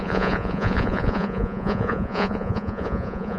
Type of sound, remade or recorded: remade